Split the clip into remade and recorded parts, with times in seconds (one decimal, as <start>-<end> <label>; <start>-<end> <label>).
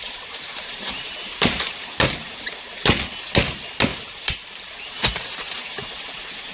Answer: 0.0-1.9 remade; 1.9-3.9 recorded; 3.9-4.7 remade; 4.7-6.5 recorded